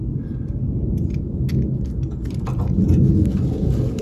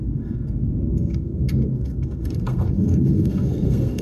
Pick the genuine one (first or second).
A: first